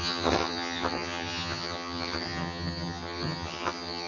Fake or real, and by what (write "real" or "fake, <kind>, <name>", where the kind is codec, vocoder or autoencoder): fake, vocoder, HiFi-GAN